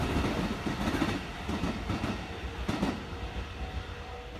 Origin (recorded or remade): recorded